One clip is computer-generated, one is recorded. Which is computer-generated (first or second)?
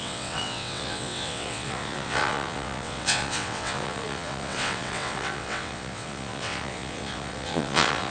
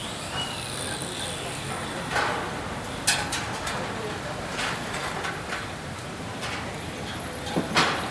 first